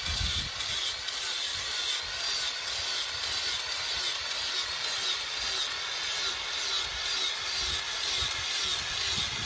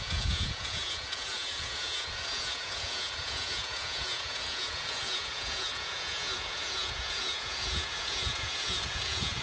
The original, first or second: first